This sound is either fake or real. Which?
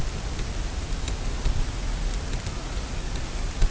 real